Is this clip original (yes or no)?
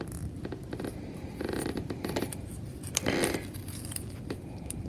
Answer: yes